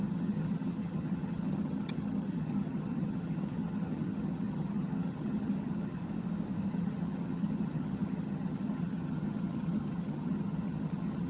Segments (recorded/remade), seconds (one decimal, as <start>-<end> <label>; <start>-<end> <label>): 0.0-6.0 remade; 6.0-6.7 recorded; 6.7-11.3 remade